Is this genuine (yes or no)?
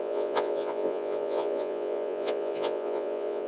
no